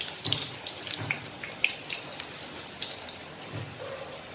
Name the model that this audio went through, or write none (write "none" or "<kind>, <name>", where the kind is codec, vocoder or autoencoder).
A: none